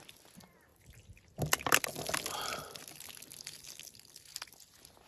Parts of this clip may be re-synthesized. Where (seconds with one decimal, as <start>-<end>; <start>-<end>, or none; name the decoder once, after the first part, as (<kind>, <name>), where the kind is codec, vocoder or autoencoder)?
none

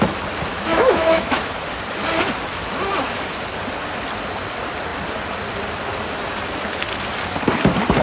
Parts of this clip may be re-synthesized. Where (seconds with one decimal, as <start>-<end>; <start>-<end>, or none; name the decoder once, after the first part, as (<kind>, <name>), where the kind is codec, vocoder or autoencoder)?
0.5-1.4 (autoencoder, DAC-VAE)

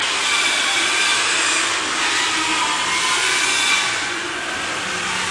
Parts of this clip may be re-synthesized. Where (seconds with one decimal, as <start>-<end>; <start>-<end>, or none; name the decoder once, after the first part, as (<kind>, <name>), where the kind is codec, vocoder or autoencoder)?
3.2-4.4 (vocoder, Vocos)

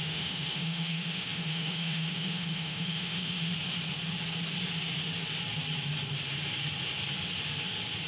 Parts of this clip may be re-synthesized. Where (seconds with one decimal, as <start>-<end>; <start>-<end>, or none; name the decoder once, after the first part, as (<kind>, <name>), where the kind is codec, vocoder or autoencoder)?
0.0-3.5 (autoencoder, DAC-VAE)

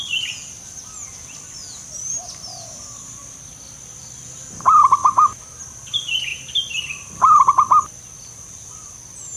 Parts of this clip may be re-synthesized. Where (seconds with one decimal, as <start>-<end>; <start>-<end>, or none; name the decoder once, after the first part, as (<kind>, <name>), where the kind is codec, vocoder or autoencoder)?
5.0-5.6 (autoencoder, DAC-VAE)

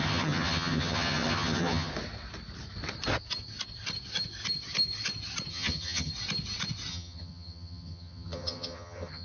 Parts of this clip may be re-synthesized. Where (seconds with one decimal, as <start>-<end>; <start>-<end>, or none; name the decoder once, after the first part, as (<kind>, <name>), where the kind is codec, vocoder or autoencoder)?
0.0-1.9 (vocoder, HiFi-GAN); 5.5-6.1; 6.9-9.2

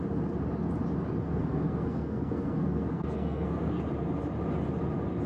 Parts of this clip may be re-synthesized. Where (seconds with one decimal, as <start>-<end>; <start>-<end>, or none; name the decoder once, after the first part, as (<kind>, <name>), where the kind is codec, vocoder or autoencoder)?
1.2-3.8 (codec, SNAC)